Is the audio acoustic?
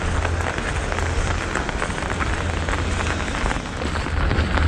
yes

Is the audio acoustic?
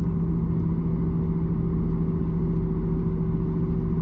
yes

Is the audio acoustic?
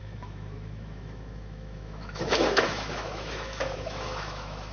no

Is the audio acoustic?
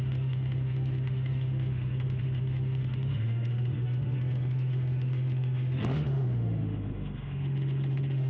no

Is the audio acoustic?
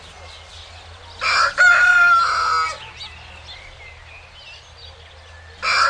yes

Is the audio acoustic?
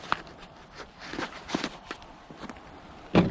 yes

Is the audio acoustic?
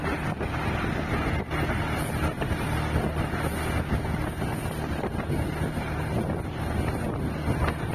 yes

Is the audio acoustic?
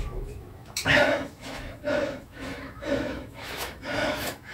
no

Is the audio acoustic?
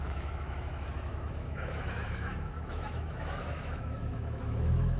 no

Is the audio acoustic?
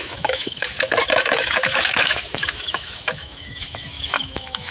no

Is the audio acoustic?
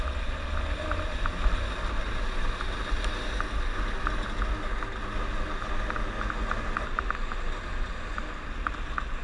yes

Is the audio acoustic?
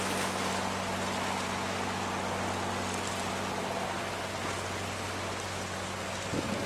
yes